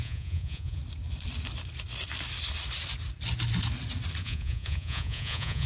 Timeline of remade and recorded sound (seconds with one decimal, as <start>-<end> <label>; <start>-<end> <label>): 0.0-0.8 remade; 0.8-4.2 recorded; 4.2-5.7 remade